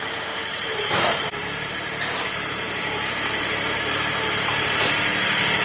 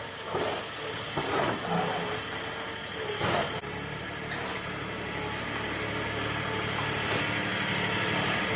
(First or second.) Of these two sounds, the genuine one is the second